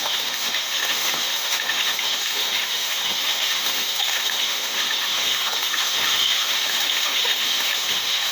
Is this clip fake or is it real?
fake